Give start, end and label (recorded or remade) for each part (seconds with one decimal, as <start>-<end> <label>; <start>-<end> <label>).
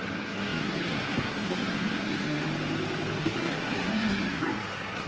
0.0-2.5 remade; 2.5-3.2 recorded; 3.2-5.1 remade